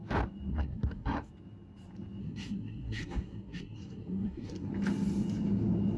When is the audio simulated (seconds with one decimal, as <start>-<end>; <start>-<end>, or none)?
0.5-1.3; 2.2-4.7